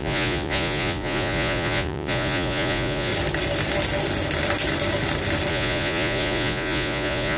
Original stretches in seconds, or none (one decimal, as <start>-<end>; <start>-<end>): 3.1-5.5